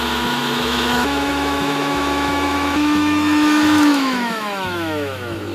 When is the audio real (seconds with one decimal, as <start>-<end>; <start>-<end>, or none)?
none